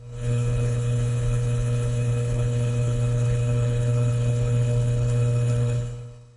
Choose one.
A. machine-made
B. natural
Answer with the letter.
A